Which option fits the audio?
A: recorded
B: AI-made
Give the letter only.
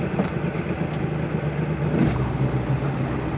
A